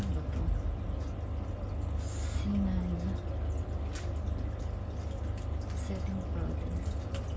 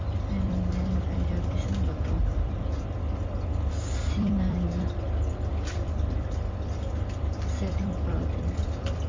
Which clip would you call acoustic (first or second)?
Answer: first